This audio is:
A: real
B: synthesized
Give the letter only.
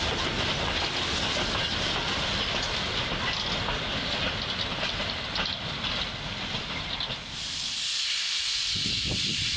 A